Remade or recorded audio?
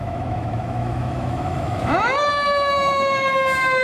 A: remade